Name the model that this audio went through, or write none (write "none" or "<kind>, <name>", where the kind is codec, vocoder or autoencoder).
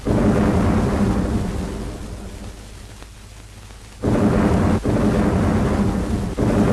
none